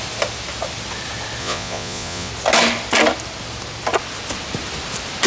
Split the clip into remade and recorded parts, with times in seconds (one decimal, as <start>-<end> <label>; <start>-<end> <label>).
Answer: 0.0-1.4 recorded; 1.4-2.3 remade; 2.3-5.3 recorded